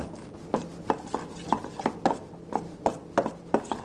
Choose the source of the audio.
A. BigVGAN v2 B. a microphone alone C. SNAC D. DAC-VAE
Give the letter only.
B